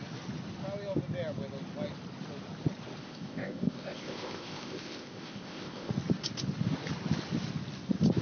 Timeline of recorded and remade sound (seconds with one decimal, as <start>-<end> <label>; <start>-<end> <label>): 0.0-3.0 recorded; 3.0-5.9 remade; 5.9-8.2 recorded